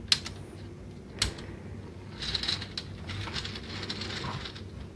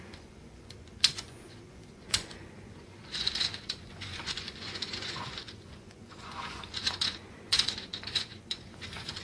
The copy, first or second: second